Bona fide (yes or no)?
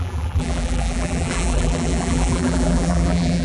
no